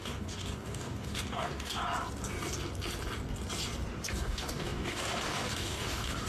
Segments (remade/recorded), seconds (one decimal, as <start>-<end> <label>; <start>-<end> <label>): 0.0-1.8 remade; 1.8-4.0 recorded; 4.0-6.3 remade